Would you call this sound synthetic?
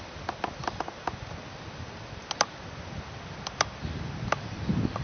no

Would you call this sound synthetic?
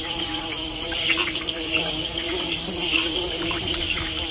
no